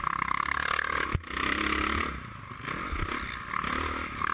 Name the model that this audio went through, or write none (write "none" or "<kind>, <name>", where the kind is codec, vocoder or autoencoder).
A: none